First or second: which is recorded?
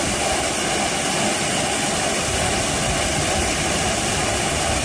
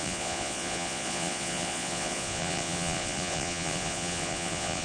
first